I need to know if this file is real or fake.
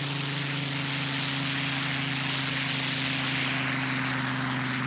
real